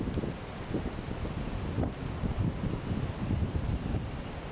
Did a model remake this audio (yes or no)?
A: no